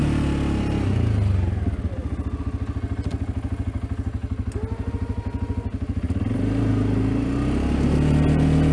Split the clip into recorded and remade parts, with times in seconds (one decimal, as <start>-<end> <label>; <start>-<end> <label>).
0.0-8.7 recorded